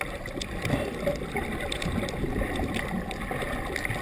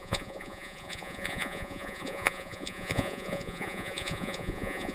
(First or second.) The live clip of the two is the first